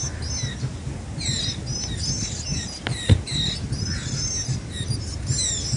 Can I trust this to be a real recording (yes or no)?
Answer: yes